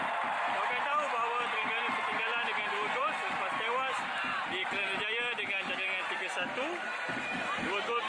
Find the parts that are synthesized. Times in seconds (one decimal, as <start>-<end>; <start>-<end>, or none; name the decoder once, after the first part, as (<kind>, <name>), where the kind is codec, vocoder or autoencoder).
none